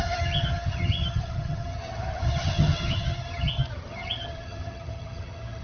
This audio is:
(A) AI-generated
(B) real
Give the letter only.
A